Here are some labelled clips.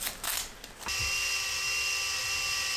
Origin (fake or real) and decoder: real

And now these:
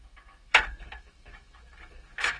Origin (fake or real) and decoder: fake, autoencoder, DAC-VAE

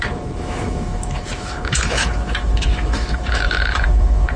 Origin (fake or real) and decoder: fake, autoencoder, DAC-VAE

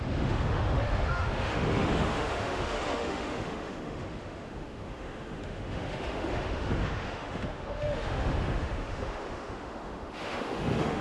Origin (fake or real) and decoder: fake, autoencoder, DAC-VAE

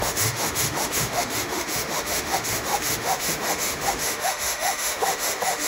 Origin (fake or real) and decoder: fake, autoencoder, DAC-VAE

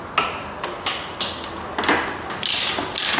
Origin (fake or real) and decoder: real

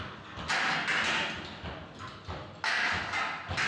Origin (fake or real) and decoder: real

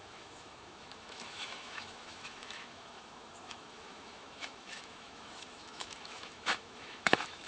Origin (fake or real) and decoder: fake, autoencoder, DAC-VAE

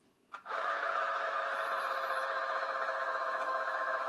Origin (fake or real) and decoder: fake, autoencoder, DAC-VAE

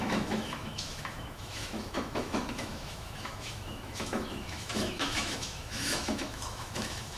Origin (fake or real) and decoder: fake, autoencoder, DAC-VAE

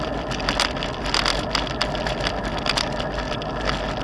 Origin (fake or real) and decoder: real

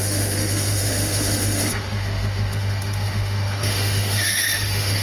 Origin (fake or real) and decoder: fake, autoencoder, DAC-VAE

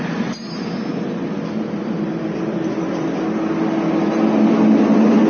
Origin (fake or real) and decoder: real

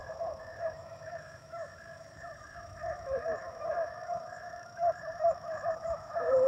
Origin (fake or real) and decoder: fake, autoencoder, DAC-VAE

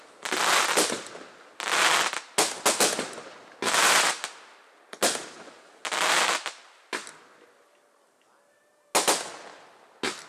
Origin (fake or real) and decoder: real